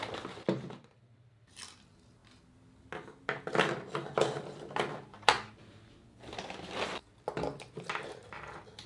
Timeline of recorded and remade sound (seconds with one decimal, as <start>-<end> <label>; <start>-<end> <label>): 0.0-8.9 recorded